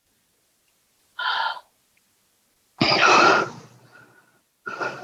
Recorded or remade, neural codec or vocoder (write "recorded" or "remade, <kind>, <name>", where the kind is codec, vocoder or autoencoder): recorded